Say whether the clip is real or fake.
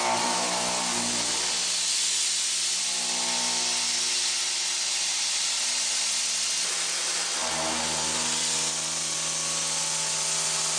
real